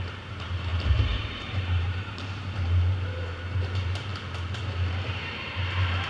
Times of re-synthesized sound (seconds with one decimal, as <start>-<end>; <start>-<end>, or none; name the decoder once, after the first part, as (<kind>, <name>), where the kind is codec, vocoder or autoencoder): 0.0-4.1 (vocoder, BigVGAN v2); 5.1-6.1